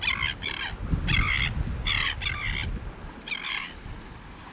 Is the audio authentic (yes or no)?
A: yes